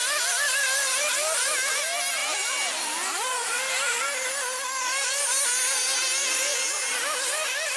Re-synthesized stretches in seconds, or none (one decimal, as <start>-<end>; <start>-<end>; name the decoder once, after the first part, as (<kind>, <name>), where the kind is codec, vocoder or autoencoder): none